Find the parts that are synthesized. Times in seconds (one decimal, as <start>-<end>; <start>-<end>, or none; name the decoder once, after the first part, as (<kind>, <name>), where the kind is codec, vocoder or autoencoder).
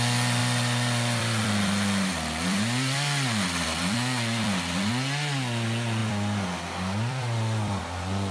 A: 0.4-4.9 (vocoder, BigVGAN v2); 6.0-7.8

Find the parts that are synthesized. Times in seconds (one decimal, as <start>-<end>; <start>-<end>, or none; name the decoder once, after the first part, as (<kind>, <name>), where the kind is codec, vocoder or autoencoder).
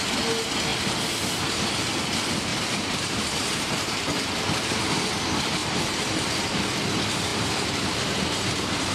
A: 2.5-4.0 (vocoder, BigVGAN v2); 5.6-6.5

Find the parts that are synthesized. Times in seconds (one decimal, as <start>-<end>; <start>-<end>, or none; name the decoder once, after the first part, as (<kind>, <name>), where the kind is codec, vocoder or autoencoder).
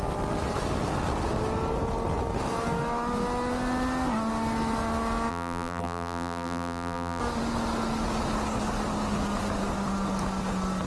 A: 5.3-7.2 (vocoder, BigVGAN v2)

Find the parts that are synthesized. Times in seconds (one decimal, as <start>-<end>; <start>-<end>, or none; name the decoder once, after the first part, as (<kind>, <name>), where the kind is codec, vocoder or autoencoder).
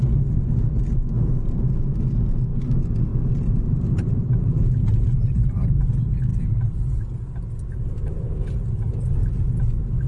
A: 3.1-5.8 (vocoder, BigVGAN v2)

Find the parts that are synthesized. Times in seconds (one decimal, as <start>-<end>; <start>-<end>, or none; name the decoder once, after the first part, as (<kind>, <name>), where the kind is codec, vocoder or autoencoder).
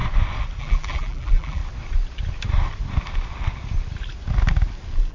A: 0.6-1.6 (vocoder, BigVGAN v2)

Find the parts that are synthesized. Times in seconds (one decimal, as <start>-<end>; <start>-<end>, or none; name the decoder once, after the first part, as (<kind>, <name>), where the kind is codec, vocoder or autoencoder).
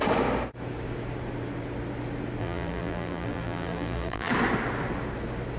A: 2.4-4.3 (vocoder, BigVGAN v2)